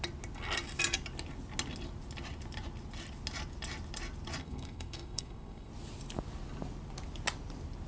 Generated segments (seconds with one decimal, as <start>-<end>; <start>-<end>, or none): 4.4-5.7